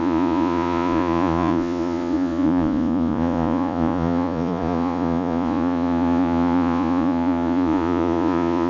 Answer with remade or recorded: remade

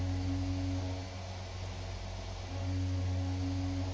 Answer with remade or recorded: recorded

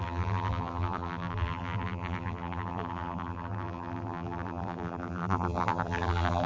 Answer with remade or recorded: remade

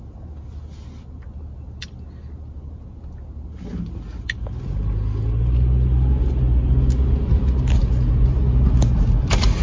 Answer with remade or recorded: recorded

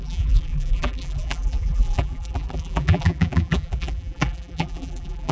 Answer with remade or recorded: remade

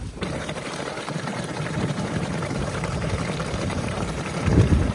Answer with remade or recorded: remade